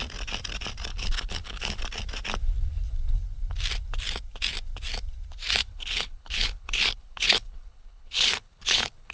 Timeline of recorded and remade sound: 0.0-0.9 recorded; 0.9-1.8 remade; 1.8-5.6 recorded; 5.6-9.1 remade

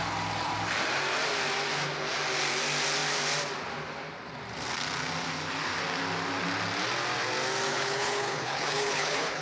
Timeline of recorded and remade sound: 0.0-7.7 recorded; 7.7-9.4 remade

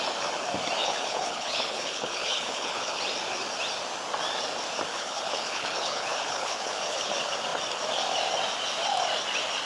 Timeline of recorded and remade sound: 0.0-0.8 recorded; 0.8-3.0 remade; 3.0-4.9 recorded; 4.9-7.1 remade; 7.1-9.7 recorded